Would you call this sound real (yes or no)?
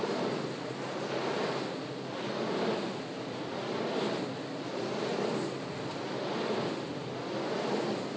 yes